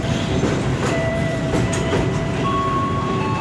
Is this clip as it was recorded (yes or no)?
no